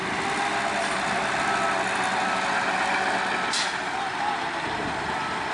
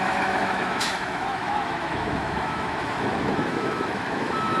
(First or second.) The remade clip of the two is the second